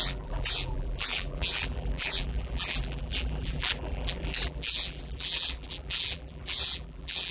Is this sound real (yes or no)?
no